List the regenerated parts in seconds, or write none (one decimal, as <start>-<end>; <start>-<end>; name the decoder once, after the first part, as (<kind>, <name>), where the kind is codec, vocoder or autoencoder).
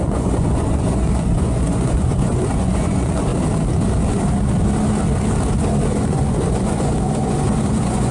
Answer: 0.0-3.3 (vocoder, Vocos); 5.9-8.1